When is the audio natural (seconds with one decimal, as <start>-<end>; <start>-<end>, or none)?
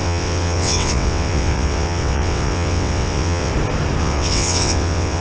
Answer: 3.5-4.0